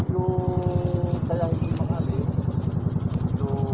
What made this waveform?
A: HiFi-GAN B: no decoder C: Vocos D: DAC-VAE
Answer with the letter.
B